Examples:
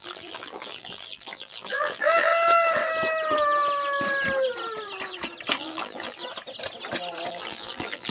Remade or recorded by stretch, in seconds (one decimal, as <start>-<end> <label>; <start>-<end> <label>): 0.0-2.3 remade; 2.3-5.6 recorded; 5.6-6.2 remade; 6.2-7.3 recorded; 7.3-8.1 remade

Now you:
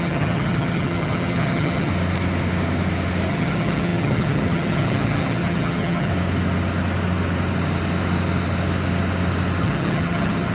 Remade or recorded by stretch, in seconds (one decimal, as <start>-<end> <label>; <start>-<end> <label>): 0.0-1.9 remade; 1.9-3.3 recorded; 3.3-6.1 remade; 6.1-9.6 recorded; 9.6-10.5 remade

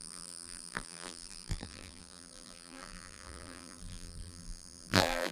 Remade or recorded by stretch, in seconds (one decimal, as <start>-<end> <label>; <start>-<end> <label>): 0.0-5.3 remade

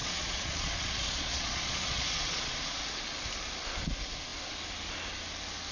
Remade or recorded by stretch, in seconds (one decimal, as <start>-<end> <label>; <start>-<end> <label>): 0.0-2.8 remade; 2.8-5.7 recorded